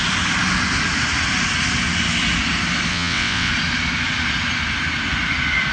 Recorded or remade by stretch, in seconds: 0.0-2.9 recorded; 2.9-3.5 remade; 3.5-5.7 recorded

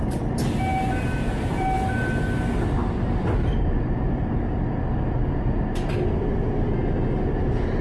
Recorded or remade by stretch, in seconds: 0.0-7.8 recorded